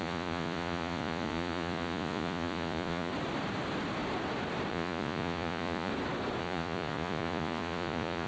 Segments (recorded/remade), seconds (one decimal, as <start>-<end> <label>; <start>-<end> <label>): 0.0-3.1 remade; 3.1-4.7 recorded; 4.7-5.9 remade; 5.9-6.4 recorded; 6.4-8.3 remade